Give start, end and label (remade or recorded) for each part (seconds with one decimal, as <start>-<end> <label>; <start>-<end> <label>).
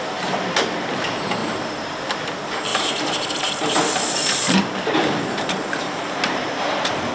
0.0-1.4 recorded; 1.4-2.3 remade; 2.3-2.7 recorded; 2.7-7.1 remade